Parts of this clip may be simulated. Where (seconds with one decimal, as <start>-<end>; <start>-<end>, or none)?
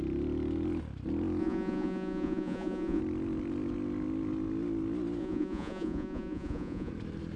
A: 1.4-3.0; 5.2-6.9